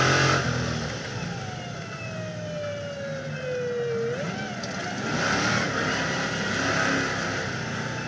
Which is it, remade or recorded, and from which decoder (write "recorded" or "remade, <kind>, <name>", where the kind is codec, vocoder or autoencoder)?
recorded